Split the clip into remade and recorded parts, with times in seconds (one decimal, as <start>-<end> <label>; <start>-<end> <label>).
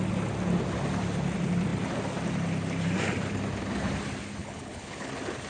0.0-4.4 recorded; 4.4-5.1 remade; 5.1-5.5 recorded